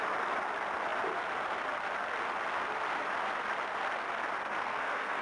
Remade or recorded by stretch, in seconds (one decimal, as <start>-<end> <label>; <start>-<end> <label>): 0.0-4.6 recorded; 4.6-5.2 remade